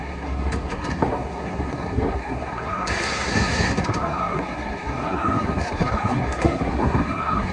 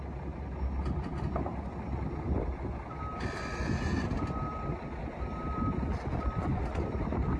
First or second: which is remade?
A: first